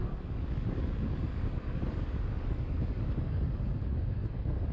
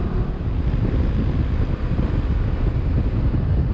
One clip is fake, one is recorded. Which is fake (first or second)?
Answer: first